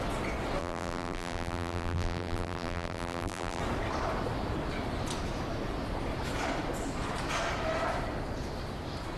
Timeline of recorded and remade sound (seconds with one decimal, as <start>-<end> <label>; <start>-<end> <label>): 0.0-0.6 recorded; 0.6-3.6 remade; 3.6-9.2 recorded